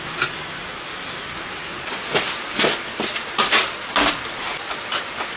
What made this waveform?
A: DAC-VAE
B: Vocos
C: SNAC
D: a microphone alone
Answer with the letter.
D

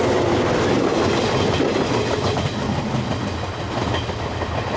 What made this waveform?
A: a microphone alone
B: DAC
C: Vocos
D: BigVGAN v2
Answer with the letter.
A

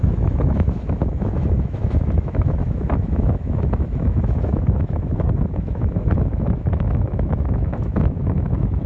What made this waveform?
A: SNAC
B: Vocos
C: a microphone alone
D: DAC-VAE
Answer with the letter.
D